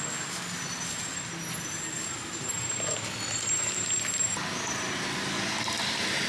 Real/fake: real